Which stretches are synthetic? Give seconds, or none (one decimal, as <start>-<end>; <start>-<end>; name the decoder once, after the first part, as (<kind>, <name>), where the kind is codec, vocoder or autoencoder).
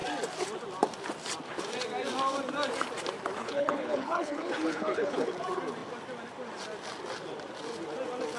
3.4-5.3 (codec, HILCodec)